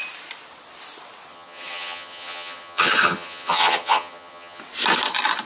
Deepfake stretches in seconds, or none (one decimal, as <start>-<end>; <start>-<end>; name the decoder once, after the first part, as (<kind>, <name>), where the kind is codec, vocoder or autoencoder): 1.3-4.6 (vocoder, HiFi-GAN)

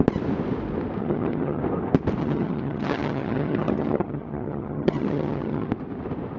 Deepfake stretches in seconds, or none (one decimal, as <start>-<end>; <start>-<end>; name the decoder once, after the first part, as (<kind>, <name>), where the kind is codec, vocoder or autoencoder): 1.0-1.6 (vocoder, HiFi-GAN); 2.2-5.7

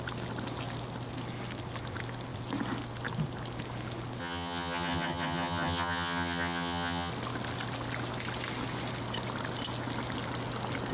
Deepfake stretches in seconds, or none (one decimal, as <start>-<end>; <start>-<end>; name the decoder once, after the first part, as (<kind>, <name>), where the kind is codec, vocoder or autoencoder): 4.2-7.1 (vocoder, HiFi-GAN)